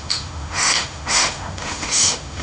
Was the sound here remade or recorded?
remade